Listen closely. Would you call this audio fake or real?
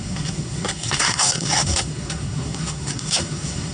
fake